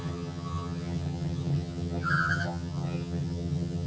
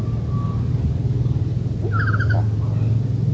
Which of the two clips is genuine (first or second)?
second